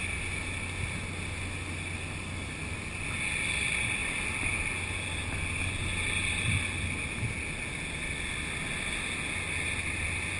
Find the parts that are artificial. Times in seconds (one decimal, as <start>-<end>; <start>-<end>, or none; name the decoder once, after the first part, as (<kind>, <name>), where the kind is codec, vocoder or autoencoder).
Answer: none